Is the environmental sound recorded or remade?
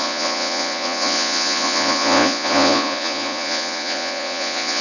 remade